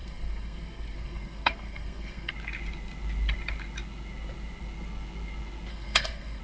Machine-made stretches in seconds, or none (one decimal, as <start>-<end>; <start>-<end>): 0.0-2.3; 5.7-6.4